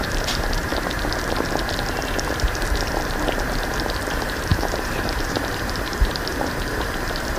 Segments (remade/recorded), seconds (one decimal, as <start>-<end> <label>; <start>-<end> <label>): 0.0-0.7 remade; 0.7-4.1 recorded; 4.1-7.4 remade